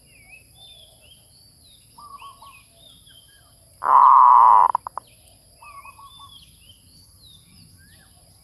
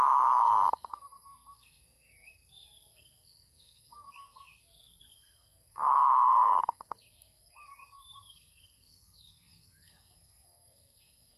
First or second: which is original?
first